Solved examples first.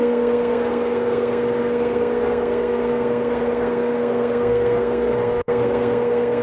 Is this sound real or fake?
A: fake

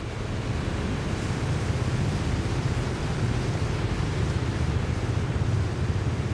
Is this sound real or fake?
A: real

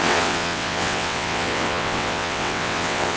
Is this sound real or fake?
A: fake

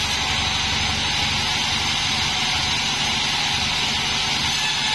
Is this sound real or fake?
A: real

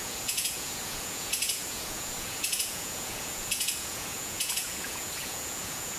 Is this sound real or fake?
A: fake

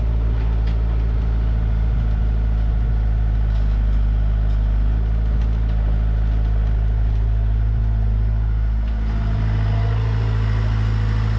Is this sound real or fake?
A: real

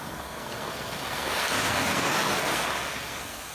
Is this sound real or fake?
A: fake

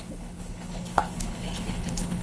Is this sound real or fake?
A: fake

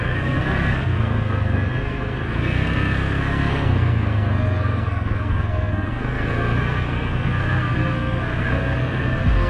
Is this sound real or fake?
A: fake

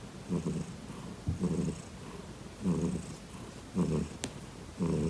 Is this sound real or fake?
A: real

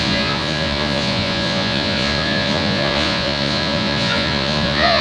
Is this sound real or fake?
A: fake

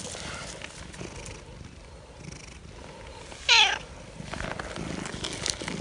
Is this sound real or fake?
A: real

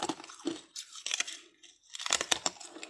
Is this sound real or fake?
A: real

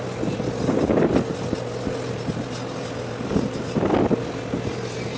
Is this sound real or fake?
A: real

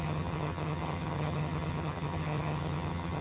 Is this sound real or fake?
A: fake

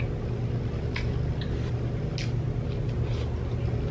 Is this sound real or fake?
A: real